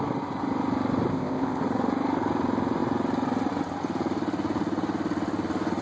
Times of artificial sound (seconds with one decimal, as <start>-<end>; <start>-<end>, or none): 1.1-1.6